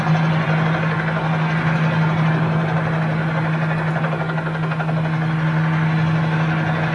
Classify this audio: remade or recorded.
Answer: recorded